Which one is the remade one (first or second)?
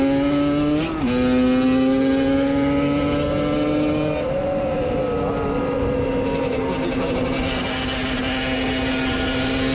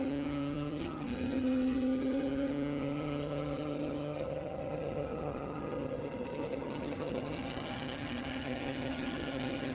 second